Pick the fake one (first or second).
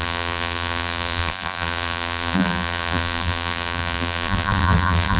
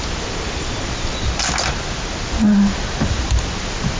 first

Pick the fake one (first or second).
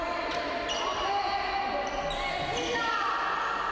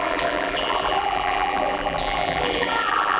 second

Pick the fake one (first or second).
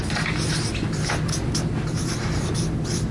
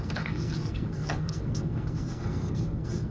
second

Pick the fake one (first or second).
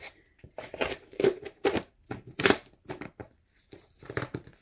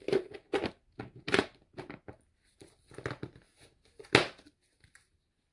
first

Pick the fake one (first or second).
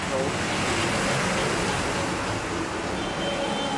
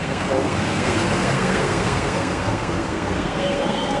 second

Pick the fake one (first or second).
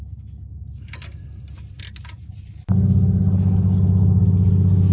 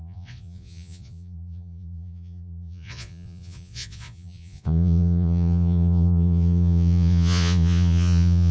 second